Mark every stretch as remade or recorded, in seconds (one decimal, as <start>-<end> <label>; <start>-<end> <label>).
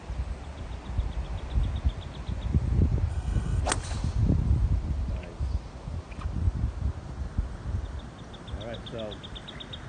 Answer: 0.0-3.1 recorded; 3.1-3.6 remade; 3.6-9.9 recorded